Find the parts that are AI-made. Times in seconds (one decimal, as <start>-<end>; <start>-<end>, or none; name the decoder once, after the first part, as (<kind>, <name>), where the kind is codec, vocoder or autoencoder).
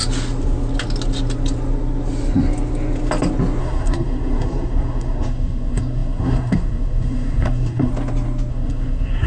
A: 3.6-7.9 (codec, SNAC); 8.5-9.3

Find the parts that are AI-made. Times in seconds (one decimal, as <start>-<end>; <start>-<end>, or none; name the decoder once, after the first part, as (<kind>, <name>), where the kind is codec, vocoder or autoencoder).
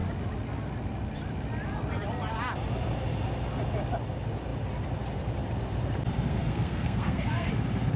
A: 6.3-7.5 (codec, SNAC)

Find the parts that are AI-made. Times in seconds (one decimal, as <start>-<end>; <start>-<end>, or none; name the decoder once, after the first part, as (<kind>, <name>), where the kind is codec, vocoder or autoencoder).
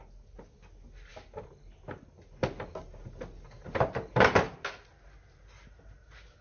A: none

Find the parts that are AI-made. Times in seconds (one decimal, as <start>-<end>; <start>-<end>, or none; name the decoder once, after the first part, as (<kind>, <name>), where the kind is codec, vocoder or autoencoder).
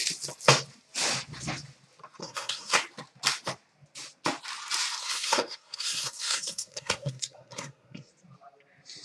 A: 2.2-2.8 (codec, SNAC); 5.0-8.1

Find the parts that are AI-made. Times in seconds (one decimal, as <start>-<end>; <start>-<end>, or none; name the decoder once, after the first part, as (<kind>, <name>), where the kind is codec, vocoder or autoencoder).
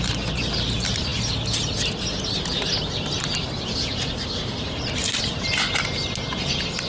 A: none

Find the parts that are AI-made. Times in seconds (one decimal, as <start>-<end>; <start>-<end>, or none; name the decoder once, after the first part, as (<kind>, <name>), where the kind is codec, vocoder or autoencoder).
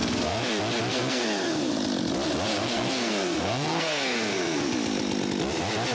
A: 0.0-0.5 (codec, SNAC); 0.9-1.7; 2.5-4.7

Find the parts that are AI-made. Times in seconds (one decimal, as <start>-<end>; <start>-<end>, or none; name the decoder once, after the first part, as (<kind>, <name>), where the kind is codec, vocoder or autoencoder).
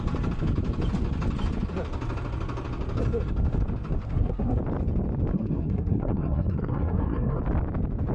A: 4.0-4.6 (codec, SNAC); 5.3-7.4